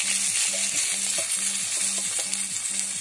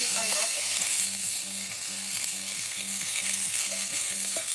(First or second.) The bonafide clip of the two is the first